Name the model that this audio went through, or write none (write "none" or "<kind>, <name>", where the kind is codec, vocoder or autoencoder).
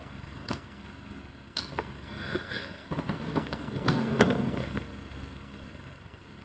codec, SNAC